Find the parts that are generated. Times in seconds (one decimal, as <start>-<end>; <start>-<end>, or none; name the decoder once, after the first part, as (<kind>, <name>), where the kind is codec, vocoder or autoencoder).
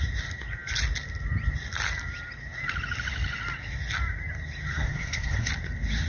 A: 4.7-5.5 (codec, SNAC)